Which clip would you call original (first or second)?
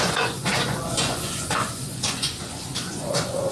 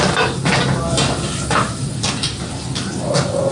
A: second